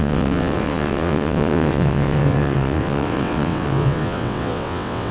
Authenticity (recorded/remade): remade